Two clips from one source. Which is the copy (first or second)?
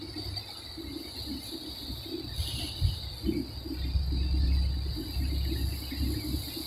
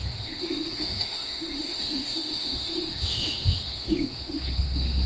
second